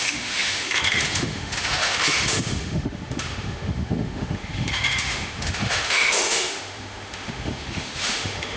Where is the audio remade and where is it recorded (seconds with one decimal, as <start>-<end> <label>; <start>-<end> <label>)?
0.0-8.6 remade